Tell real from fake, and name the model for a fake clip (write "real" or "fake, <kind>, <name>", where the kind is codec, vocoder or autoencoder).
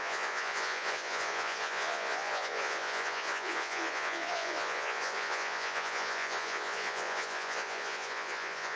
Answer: fake, vocoder, Vocos